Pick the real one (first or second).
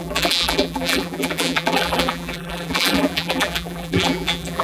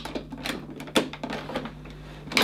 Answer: second